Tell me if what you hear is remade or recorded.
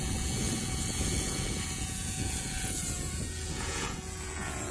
remade